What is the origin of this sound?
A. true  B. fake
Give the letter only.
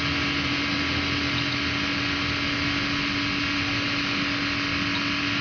A